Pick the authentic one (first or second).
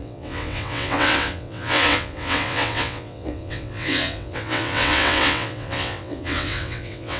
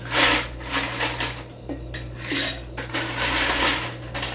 second